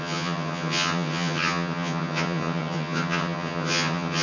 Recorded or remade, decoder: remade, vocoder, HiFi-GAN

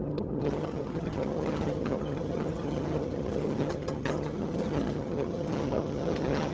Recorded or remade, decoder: remade, vocoder, HiFi-GAN